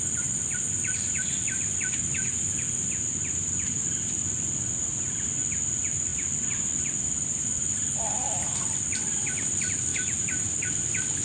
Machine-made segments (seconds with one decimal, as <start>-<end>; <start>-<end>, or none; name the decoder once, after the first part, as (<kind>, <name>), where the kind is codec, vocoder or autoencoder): 9.9-10.7 (vocoder, BigVGAN v2)

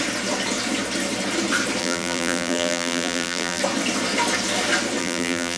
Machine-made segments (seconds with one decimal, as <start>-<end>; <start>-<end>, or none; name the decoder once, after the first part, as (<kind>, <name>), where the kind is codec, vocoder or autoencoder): 1.8-3.6 (vocoder, BigVGAN v2); 5.0-5.6

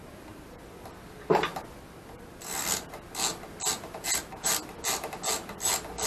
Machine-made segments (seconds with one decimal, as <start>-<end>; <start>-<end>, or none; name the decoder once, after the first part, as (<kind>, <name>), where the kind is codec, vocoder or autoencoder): none